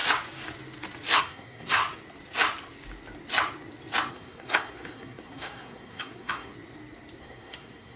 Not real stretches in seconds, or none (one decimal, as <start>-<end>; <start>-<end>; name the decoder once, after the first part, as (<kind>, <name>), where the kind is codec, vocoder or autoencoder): 1.2-1.8 (codec, SNAC); 4.1-6.5; 7.2-8.0